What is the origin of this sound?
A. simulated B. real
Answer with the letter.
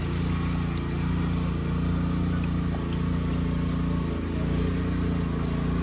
B